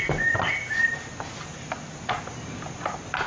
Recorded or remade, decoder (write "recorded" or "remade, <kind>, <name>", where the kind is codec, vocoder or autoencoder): recorded